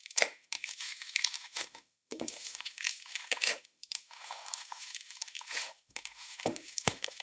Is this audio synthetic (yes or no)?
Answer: yes